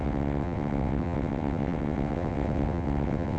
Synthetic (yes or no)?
yes